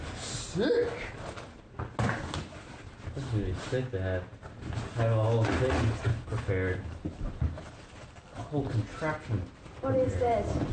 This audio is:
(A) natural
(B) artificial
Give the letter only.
A